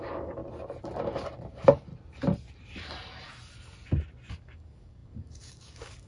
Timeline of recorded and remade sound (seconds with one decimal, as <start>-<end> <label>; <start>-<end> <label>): 0.0-0.4 remade; 0.4-1.5 recorded; 1.5-1.9 remade; 1.9-4.3 recorded; 4.3-6.1 remade